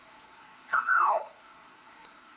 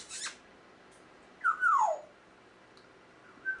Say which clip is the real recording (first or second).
second